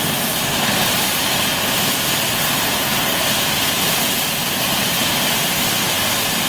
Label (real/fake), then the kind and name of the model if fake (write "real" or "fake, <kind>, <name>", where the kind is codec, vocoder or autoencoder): real